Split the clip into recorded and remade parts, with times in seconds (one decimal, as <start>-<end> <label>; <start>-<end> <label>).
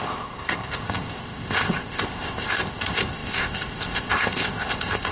0.0-5.1 remade